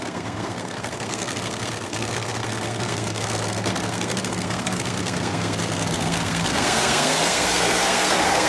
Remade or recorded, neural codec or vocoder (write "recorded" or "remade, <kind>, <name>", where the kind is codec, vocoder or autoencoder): remade, codec, SNAC